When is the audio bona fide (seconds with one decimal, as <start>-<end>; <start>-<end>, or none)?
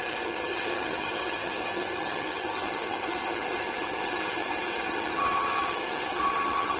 none